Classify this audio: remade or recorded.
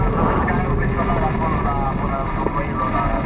recorded